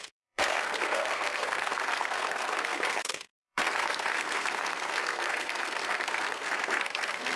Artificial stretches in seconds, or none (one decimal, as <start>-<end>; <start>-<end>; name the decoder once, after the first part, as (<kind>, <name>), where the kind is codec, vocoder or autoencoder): 0.0-7.4 (codec, SNAC)